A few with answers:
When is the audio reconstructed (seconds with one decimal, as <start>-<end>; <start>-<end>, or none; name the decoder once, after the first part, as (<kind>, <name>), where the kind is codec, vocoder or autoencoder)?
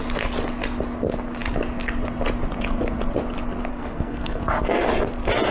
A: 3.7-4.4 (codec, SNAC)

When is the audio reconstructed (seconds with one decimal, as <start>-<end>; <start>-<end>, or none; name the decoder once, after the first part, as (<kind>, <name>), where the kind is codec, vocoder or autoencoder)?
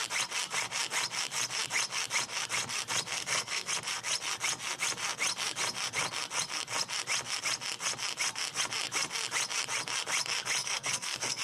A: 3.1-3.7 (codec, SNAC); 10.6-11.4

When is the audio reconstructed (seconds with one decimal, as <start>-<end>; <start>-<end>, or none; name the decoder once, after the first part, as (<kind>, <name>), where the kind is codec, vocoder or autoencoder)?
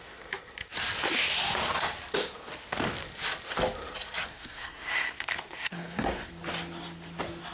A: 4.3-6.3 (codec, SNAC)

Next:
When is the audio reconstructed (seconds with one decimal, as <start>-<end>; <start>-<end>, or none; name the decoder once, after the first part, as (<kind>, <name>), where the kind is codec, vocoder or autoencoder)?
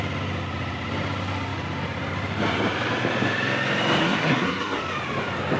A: 4.0-4.8 (codec, SNAC)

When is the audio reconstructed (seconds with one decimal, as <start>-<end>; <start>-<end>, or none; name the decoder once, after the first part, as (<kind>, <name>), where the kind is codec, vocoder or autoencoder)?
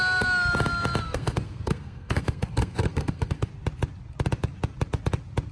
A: 1.0-3.5 (codec, SNAC)